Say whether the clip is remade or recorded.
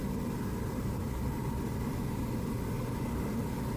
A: recorded